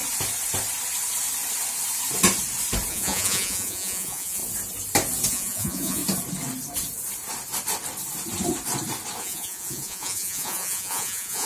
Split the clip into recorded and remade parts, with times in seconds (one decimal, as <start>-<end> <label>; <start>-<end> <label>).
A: 0.0-2.9 recorded; 2.9-4.4 remade; 4.4-5.3 recorded; 5.3-6.0 remade; 6.0-9.2 recorded; 9.2-11.5 remade